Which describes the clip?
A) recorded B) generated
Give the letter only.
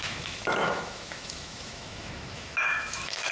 B